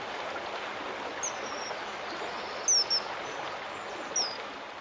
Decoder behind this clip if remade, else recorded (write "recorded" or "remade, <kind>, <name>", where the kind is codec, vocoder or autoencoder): recorded